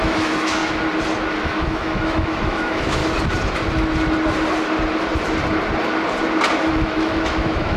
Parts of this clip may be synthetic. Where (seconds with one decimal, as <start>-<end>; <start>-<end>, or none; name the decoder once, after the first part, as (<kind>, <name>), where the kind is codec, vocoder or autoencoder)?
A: 0.0-0.6 (autoencoder, DAC-VAE); 1.4-3.0; 6.7-7.8